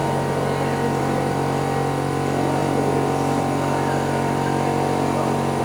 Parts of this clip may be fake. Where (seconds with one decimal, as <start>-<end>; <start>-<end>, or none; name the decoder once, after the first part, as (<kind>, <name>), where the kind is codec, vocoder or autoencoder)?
none